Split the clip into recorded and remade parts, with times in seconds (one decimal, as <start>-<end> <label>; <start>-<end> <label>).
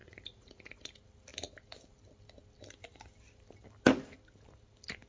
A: 0.0-0.7 remade; 0.7-5.1 recorded